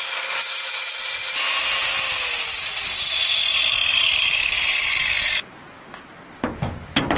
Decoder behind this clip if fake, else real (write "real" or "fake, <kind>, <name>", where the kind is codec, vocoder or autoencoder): real